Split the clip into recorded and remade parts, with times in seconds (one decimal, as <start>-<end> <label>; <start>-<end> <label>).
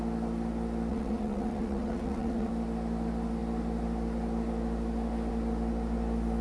0.0-0.9 recorded; 0.9-2.5 remade; 2.5-6.4 recorded